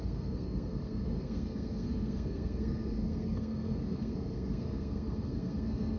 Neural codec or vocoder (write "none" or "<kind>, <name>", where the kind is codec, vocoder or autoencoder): codec, SNAC